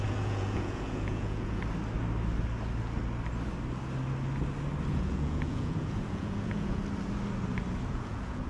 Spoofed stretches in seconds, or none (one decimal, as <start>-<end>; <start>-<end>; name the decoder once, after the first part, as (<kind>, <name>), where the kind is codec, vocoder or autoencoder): 0.0-1.6 (vocoder, Vocos); 4.9-6.8; 7.9-8.5